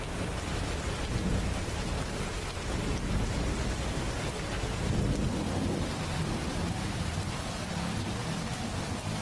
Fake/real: real